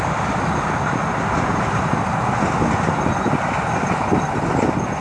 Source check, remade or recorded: recorded